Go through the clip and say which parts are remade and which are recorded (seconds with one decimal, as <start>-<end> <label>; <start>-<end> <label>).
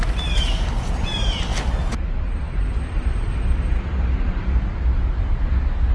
0.0-1.5 remade; 1.5-2.4 recorded; 2.4-5.9 remade